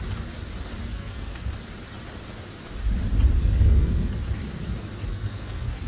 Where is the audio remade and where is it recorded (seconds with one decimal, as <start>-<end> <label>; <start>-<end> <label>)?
0.0-0.9 recorded; 0.9-1.5 remade; 1.5-3.4 recorded; 3.4-4.1 remade; 4.1-5.1 recorded; 5.1-5.9 remade

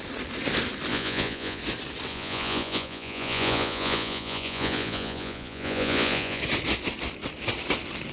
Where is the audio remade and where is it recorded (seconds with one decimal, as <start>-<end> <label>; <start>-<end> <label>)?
0.0-0.9 recorded; 0.9-1.6 remade; 1.6-2.1 recorded; 2.1-6.4 remade; 6.4-8.1 recorded